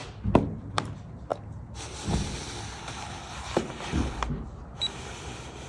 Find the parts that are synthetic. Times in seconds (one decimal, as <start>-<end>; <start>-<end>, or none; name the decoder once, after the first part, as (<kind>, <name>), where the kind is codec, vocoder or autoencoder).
0.6-1.3 (vocoder, BigVGAN v2); 4.6-5.7